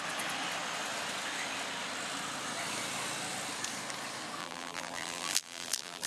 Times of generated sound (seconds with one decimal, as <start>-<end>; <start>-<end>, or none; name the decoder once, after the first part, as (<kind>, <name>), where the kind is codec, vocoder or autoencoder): 4.4-6.1 (vocoder, BigVGAN v2)